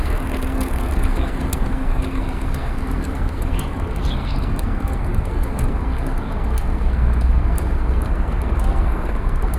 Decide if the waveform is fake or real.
fake